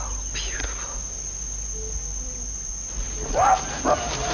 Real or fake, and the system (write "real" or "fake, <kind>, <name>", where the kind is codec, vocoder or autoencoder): real